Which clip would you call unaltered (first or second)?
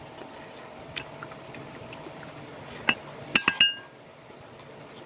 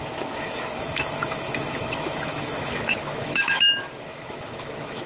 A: first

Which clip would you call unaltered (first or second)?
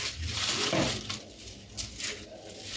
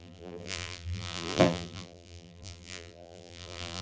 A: first